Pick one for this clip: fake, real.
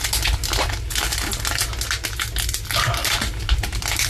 real